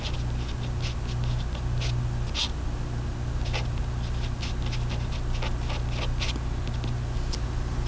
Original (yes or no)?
yes